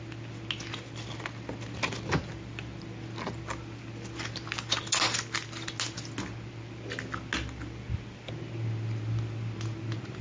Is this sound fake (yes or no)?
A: no